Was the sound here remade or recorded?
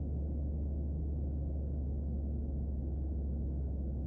recorded